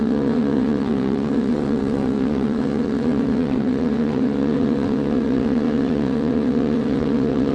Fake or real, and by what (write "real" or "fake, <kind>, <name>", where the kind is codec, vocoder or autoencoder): fake, vocoder, WaveNeXt